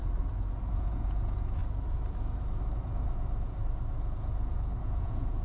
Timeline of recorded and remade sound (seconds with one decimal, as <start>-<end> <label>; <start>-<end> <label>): 0.0-0.7 recorded; 0.7-1.6 remade; 1.6-4.8 recorded; 4.8-5.4 remade